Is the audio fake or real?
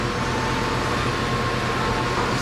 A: real